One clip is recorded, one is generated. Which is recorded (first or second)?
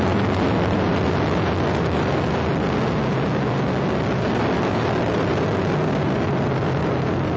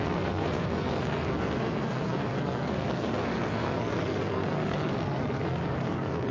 first